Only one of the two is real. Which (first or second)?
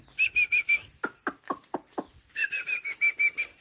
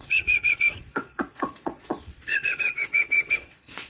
first